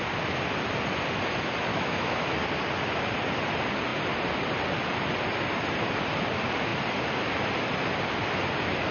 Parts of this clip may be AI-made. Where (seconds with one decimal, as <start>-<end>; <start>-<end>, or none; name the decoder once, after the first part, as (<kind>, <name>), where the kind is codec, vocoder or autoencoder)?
1.7-2.3 (autoencoder, DAC-VAE)